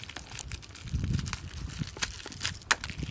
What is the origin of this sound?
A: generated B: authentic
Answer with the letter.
B